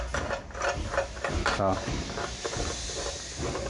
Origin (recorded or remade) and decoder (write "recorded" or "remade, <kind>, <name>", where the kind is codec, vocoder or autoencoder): recorded